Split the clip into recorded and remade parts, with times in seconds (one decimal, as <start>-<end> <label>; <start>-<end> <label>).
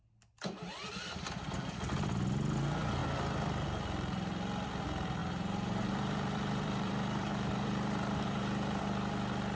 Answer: 0.0-0.8 recorded; 0.8-1.7 remade; 1.7-5.2 recorded; 5.2-8.8 remade; 8.8-9.6 recorded